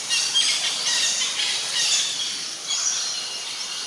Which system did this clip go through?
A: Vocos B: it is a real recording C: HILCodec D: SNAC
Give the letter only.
B